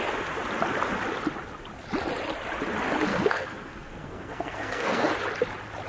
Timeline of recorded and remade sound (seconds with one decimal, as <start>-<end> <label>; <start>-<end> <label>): 0.0-3.1 recorded; 3.1-5.1 remade; 5.1-5.9 recorded